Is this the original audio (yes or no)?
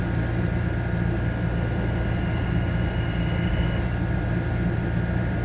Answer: yes